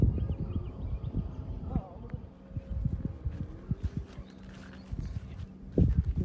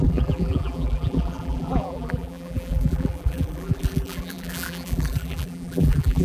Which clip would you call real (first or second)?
first